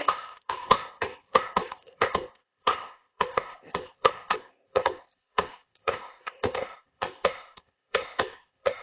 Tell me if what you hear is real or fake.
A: fake